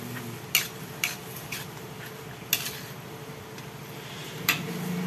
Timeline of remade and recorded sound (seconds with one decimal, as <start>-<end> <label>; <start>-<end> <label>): 0.0-4.2 recorded; 4.2-5.1 remade